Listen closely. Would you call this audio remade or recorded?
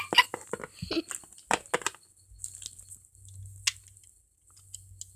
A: recorded